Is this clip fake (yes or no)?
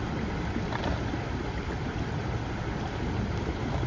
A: yes